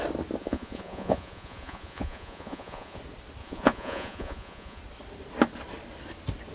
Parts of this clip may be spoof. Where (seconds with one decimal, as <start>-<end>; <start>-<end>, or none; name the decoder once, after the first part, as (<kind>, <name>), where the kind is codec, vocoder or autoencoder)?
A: 0.4-3.0 (vocoder, Vocos); 3.4-4.8